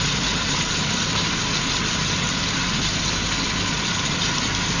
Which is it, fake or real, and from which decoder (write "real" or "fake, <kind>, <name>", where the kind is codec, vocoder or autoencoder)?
real